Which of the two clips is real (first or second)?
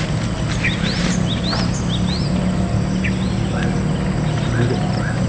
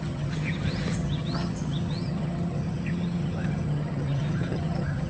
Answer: first